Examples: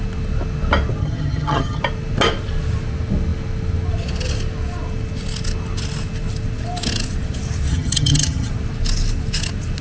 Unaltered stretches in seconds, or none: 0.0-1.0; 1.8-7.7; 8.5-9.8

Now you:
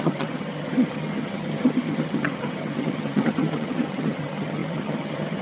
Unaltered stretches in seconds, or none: none

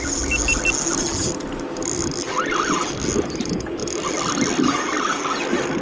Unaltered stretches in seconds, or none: 0.0-5.8